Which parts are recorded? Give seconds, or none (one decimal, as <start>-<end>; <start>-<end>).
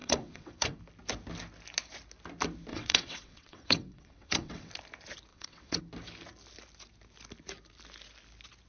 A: 0.8-2.7; 4.7-5.3; 5.8-8.7